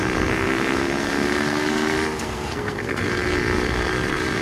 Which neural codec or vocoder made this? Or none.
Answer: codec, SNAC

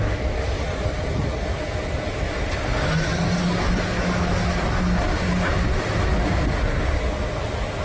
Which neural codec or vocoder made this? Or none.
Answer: none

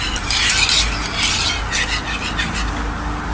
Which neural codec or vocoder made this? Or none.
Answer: none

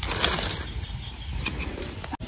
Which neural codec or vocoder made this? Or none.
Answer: none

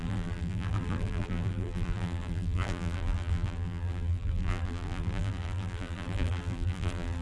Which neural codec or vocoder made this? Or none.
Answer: vocoder, BigVGAN v2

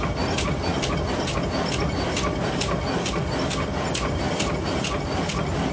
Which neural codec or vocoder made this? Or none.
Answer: none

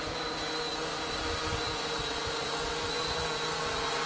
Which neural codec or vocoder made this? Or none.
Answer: none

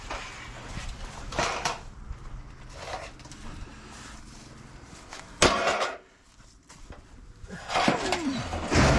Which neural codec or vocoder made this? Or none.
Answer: none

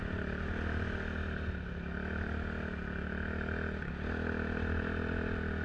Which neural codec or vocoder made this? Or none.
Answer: none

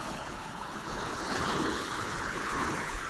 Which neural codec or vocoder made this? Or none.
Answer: codec, HILCodec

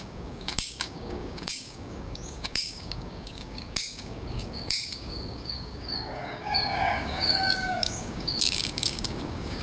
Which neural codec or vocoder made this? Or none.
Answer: codec, DAC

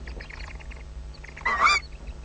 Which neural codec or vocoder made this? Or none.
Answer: none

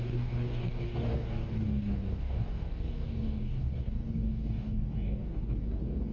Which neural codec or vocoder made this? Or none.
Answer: codec, DAC